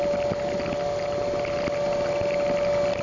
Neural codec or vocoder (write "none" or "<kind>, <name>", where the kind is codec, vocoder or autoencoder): none